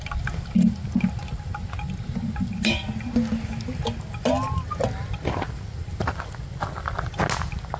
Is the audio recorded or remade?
recorded